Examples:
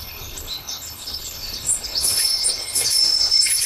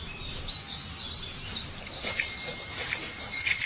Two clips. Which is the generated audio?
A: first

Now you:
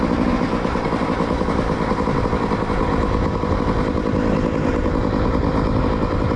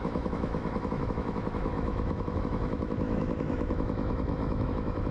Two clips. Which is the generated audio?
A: second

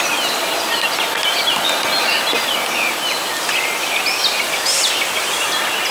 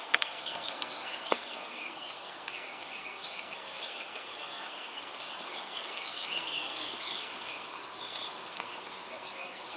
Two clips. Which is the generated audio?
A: second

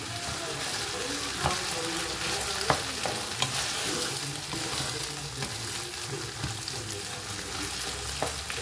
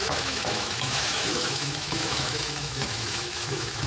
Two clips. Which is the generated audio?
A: second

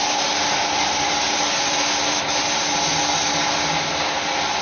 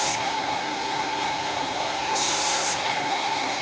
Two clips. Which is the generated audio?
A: second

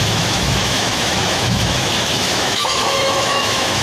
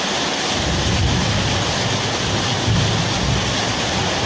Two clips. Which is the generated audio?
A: first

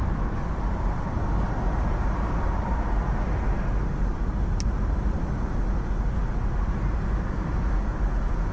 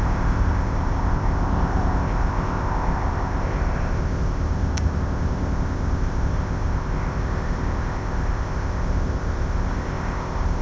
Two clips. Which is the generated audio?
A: second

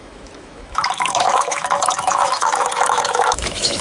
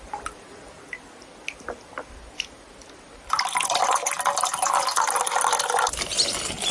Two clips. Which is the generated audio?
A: first